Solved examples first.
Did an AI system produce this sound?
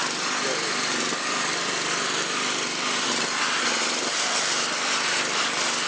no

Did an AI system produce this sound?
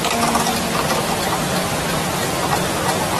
no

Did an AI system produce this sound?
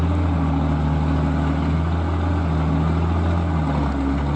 no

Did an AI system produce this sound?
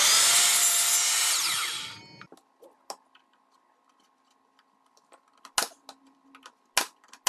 no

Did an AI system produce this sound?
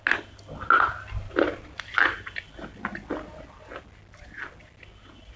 no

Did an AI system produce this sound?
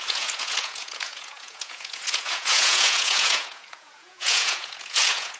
yes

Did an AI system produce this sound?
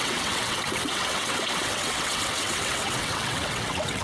yes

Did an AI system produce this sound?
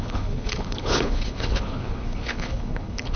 yes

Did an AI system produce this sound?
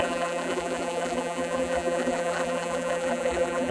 yes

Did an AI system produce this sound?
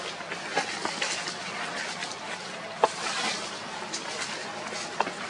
no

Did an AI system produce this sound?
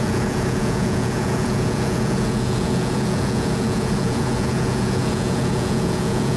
yes